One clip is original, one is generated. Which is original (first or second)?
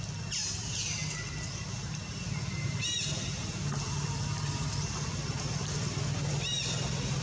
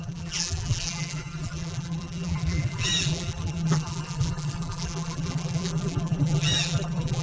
first